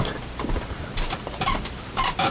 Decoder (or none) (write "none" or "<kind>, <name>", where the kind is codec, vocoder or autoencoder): vocoder, BigVGAN v2